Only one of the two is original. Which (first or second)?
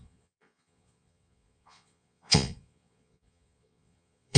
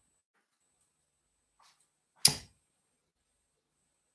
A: second